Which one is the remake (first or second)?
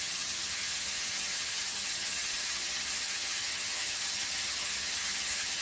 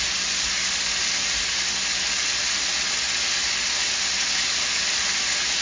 first